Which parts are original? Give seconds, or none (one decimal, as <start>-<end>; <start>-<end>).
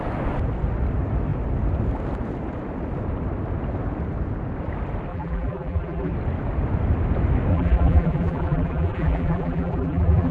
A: 0.0-5.1; 6.1-7.5